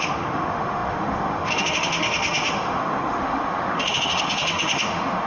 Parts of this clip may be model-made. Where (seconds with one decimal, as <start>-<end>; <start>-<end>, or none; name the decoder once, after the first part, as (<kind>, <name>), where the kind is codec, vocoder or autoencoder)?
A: 0.0-5.3 (autoencoder, DAC-VAE)